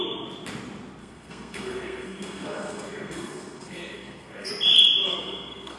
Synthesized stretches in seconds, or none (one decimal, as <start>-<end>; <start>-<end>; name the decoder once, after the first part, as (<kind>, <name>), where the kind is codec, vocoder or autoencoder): 1.0-4.5 (codec, SNAC); 5.1-5.8